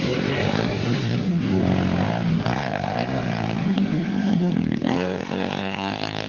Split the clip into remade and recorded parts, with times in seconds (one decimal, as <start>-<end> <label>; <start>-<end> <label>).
0.0-1.6 remade; 1.6-2.3 recorded; 2.3-6.3 remade